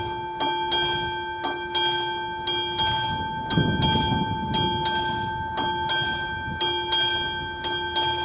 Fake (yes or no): no